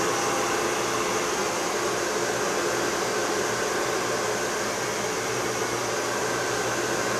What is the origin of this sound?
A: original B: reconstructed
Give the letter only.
A